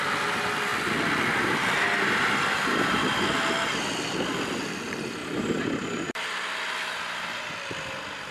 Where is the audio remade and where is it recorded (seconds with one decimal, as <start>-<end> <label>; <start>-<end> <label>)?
0.0-5.2 recorded; 5.2-6.2 remade; 6.2-8.3 recorded